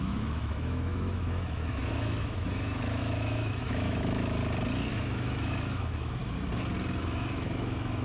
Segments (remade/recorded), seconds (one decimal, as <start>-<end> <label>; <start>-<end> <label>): 0.0-4.4 remade; 4.4-4.9 recorded; 4.9-6.2 remade; 6.2-7.0 recorded; 7.0-8.0 remade